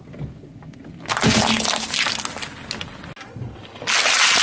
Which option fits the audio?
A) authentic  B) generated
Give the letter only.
A